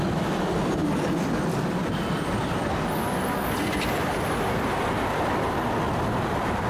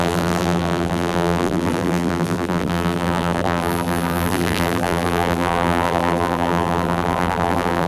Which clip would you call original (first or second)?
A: first